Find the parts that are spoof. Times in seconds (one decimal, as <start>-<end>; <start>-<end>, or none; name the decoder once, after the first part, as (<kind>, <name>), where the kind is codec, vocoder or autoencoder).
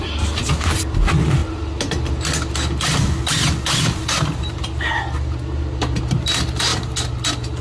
none